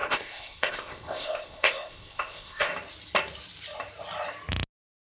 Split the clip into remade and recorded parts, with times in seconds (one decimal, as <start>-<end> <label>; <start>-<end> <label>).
0.0-2.7 remade; 2.7-5.1 recorded